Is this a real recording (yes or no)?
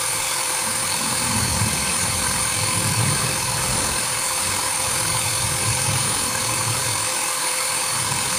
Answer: no